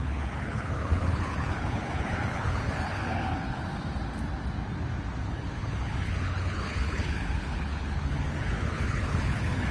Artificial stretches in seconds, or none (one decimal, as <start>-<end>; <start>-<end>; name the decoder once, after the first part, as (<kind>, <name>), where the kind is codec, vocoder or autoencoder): 0.0-3.6 (codec, HILCodec); 5.2-9.7